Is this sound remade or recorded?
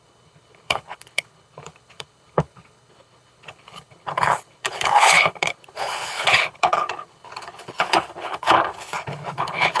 remade